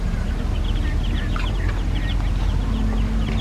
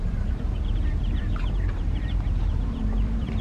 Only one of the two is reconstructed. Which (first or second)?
second